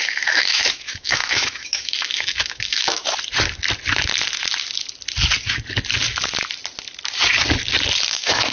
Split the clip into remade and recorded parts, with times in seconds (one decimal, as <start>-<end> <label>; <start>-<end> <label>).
0.0-3.0 remade; 3.0-8.1 recorded; 8.1-8.5 remade